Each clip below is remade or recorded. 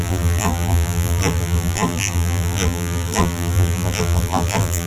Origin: remade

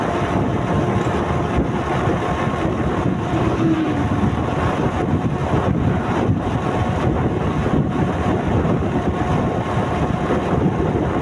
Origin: recorded